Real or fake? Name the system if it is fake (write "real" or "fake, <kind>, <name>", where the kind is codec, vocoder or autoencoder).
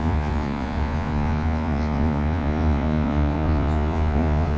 fake, vocoder, Vocos